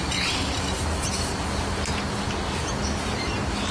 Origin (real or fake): real